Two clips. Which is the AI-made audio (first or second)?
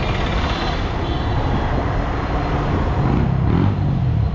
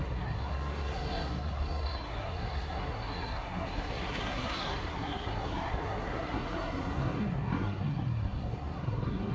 second